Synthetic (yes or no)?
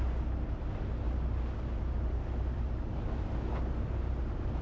no